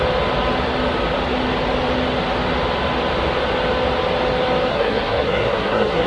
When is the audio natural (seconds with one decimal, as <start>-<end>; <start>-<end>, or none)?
0.0-4.7